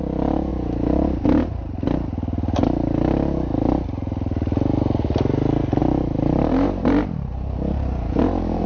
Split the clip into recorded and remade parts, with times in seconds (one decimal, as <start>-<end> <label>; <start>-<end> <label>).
0.0-5.8 recorded; 5.8-8.7 remade